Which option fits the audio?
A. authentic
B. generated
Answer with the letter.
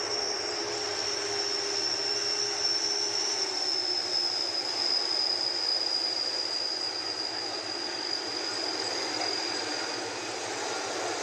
A